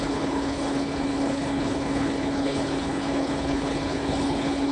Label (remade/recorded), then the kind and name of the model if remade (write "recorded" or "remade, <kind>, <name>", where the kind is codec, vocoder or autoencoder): remade, codec, HILCodec